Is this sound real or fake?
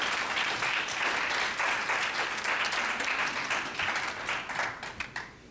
real